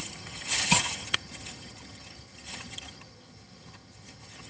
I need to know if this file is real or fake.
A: fake